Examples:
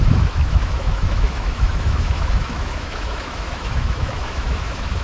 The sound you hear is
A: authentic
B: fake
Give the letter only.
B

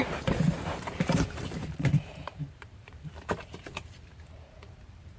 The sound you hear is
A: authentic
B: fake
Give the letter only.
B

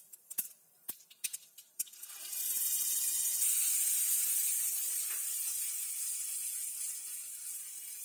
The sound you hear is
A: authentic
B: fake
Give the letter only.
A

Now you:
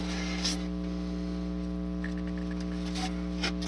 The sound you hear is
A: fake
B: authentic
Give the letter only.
B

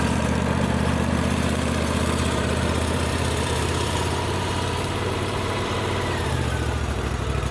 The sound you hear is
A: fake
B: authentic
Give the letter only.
A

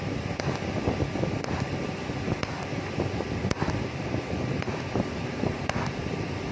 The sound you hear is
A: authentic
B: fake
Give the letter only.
A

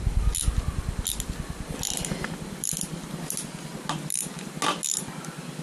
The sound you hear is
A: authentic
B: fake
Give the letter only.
A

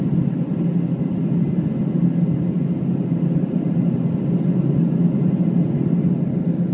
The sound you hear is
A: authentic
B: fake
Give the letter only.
A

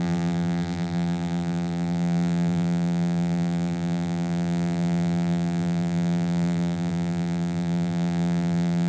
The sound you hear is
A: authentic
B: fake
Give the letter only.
B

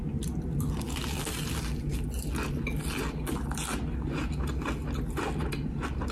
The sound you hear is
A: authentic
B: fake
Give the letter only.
A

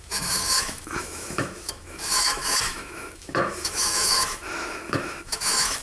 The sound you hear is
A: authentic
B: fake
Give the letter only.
B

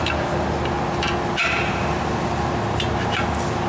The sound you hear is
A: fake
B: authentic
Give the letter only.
B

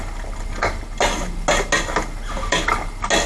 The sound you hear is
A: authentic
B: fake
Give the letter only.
A